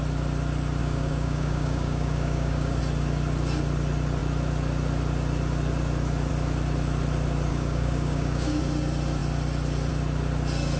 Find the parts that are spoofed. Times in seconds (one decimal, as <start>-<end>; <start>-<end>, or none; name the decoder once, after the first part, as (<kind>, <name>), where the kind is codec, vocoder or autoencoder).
0.8-2.8 (codec, DAC); 7.5-8.6

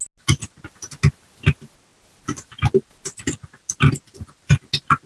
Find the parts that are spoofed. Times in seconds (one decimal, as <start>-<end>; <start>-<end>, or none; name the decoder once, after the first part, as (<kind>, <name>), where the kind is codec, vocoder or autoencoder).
none

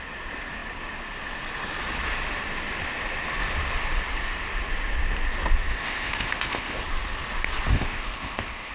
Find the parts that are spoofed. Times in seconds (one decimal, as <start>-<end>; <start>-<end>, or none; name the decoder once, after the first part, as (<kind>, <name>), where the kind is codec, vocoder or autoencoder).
5.7-6.8 (codec, ZipCodec); 7.7-8.7

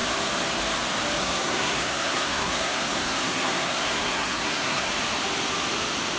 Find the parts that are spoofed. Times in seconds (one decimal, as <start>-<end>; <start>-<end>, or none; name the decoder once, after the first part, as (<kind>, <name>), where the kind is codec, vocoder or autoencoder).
1.2-4.9 (codec, SNAC)